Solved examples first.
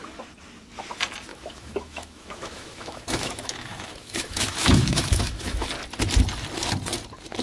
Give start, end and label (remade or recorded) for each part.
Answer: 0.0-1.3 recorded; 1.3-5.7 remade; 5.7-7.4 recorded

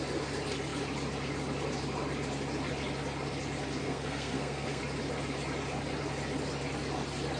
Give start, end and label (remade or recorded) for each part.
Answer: 0.0-3.8 recorded; 3.8-4.8 remade; 4.8-7.4 recorded

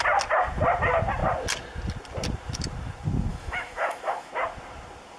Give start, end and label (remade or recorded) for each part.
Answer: 0.0-3.3 recorded; 3.3-4.3 remade; 4.3-5.2 recorded

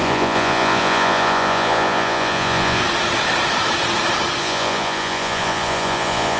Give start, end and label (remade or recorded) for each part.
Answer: 0.0-2.8 remade; 2.8-4.4 recorded; 4.4-6.4 remade

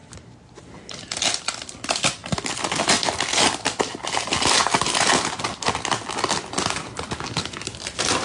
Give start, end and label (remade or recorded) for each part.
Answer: 0.0-8.2 recorded

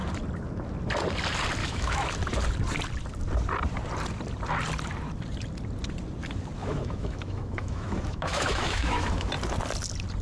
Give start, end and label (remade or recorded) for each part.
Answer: 0.0-1.6 recorded; 1.6-2.1 remade; 2.1-6.6 recorded; 6.6-9.3 remade; 9.3-10.2 recorded

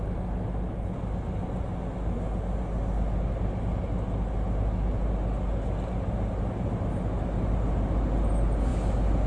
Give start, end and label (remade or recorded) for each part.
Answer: 0.0-9.3 recorded

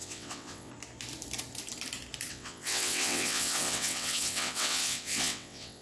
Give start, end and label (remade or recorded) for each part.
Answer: 0.0-0.7 remade; 0.7-2.3 recorded; 2.3-5.8 remade